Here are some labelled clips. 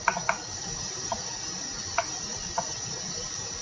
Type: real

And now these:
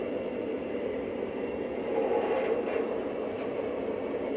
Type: fake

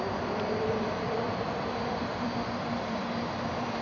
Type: fake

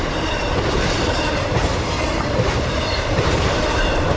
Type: fake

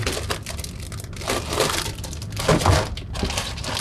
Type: real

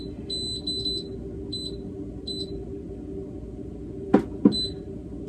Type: real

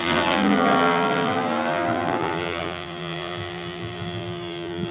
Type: fake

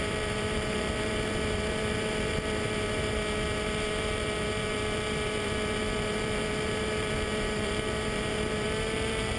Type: fake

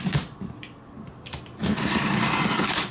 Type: real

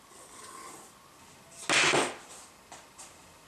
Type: real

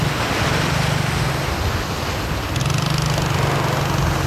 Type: real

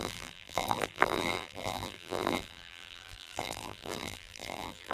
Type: fake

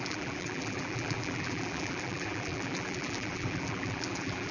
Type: fake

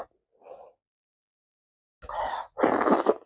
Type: real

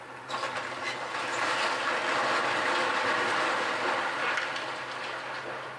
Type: real